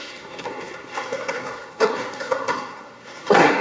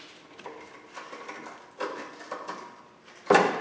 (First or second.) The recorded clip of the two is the second